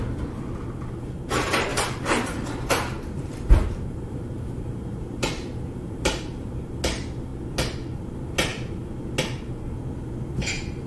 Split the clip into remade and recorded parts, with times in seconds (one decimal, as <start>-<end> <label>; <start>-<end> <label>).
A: 0.0-1.7 recorded; 1.7-6.5 remade; 6.5-10.9 recorded